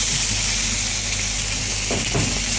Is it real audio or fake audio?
real